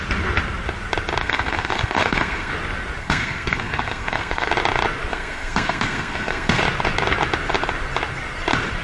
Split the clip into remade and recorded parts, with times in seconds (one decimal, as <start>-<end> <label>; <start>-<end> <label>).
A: 0.0-1.2 recorded; 1.2-2.5 remade; 2.5-3.0 recorded; 3.0-4.5 remade; 4.5-5.1 recorded; 5.1-6.6 remade; 6.6-8.8 recorded